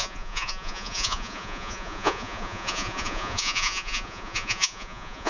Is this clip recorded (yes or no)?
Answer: no